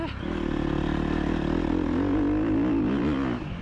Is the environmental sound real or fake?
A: real